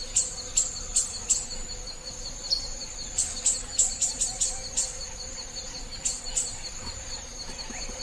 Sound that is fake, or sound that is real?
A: real